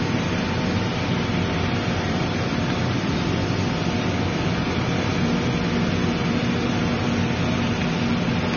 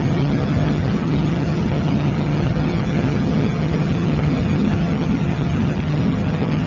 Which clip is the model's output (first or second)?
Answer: second